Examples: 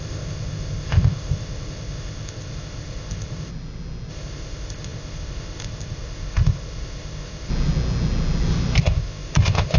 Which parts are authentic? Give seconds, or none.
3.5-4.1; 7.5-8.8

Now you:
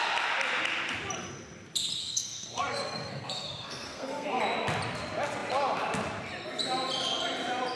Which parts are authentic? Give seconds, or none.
0.0-2.0; 4.4-7.8

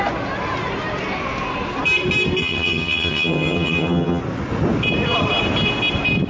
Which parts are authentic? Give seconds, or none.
0.0-2.4; 4.2-6.3

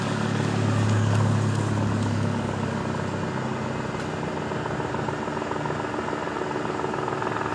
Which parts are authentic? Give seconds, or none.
2.8-7.5

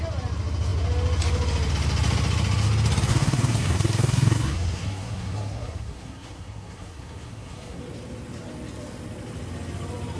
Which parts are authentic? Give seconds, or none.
0.0-3.1; 7.8-10.2

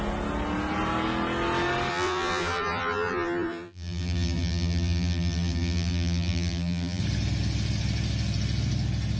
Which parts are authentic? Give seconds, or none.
0.0-1.9; 7.0-9.2

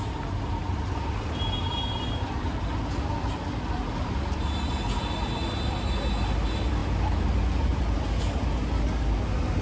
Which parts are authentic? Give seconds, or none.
0.0-9.6

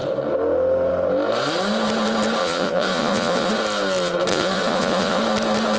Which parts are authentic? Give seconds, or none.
0.0-2.4; 3.5-4.3; 5.2-5.8